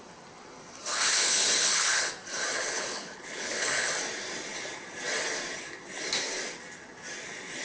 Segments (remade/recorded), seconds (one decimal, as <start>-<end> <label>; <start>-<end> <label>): 0.0-0.9 recorded; 0.9-2.1 remade; 2.1-2.5 recorded; 2.5-3.9 remade; 3.9-7.6 recorded

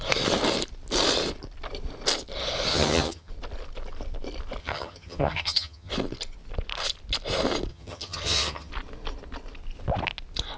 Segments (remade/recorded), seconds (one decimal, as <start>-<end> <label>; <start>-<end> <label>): 0.0-2.7 recorded; 2.7-3.3 remade; 3.3-4.6 recorded; 4.6-5.9 remade; 5.9-7.7 recorded; 7.7-8.7 remade; 8.7-10.6 recorded

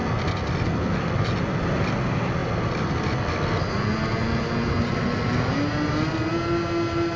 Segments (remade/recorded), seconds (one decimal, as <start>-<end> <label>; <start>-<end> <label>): 0.0-7.2 recorded

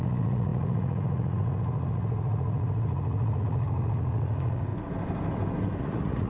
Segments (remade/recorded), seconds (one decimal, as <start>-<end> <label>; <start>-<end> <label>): 0.0-4.7 remade; 4.7-5.8 recorded; 5.8-6.3 remade

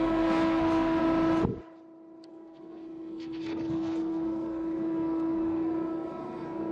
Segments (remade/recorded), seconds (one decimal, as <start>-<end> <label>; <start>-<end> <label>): 0.0-1.0 remade; 1.0-2.3 recorded; 2.3-6.7 remade

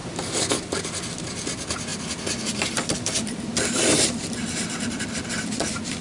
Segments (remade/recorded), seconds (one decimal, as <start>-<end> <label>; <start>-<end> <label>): 0.0-0.5 recorded; 0.5-6.0 remade